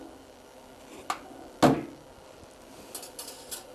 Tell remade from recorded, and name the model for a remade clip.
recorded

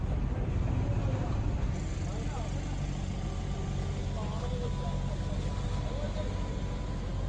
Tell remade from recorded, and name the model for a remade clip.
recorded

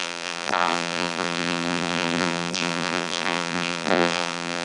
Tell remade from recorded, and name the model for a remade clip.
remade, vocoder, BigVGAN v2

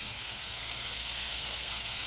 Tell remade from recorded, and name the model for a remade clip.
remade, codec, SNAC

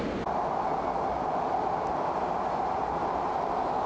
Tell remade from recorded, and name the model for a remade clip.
recorded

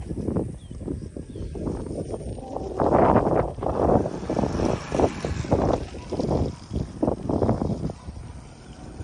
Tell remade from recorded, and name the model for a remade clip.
recorded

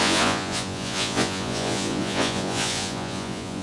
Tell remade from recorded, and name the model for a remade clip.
remade, vocoder, Vocos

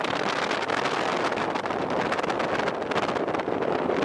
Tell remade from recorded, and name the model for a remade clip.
recorded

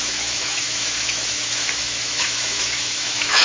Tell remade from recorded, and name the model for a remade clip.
remade, autoencoder, DAC-VAE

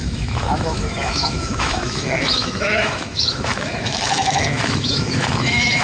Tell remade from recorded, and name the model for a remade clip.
remade, autoencoder, DAC-VAE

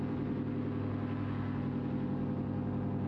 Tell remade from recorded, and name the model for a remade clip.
recorded